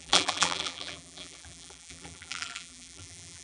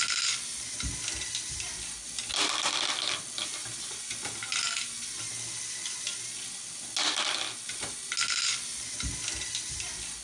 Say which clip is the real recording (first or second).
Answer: second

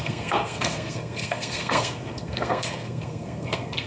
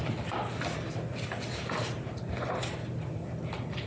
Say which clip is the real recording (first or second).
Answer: second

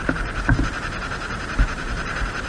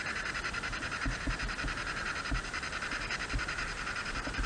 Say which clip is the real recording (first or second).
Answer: first